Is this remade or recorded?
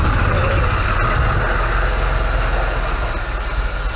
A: recorded